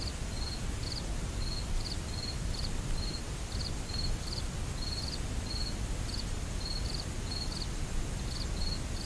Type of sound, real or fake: real